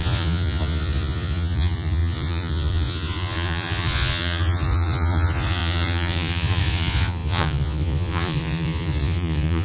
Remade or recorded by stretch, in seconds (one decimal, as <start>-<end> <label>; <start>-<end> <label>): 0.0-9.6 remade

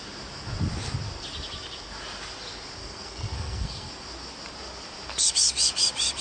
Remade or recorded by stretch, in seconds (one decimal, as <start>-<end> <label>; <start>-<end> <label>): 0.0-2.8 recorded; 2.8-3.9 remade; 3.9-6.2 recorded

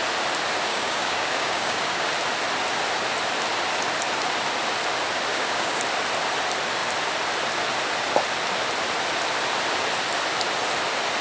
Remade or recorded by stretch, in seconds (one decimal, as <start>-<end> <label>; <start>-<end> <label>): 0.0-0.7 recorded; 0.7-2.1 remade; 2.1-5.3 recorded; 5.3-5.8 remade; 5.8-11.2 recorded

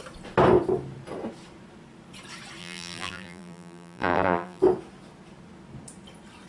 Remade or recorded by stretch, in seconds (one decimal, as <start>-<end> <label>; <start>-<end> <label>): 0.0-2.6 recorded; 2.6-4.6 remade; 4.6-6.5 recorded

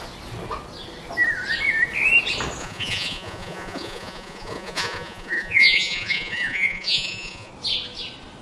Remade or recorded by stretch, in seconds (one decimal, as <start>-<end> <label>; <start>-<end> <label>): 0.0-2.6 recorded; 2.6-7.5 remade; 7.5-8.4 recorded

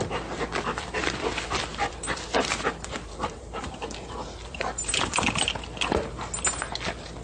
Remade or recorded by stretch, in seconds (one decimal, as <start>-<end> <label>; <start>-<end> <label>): 0.0-1.0 recorded; 1.0-5.3 remade; 5.3-7.2 recorded